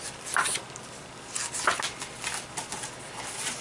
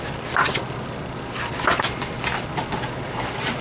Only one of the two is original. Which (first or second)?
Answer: first